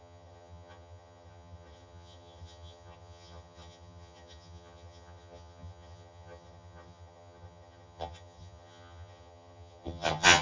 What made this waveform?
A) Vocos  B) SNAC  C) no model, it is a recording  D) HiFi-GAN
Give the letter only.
D